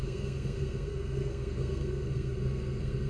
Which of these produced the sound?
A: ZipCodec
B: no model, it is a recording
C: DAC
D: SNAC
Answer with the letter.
D